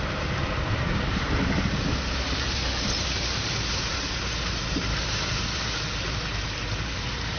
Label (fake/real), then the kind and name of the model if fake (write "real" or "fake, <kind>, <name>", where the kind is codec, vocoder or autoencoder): fake, vocoder, BigVGAN v2